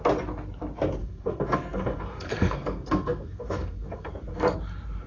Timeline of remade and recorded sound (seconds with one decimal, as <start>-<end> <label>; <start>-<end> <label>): 0.0-1.0 recorded; 1.0-4.1 remade; 4.1-5.1 recorded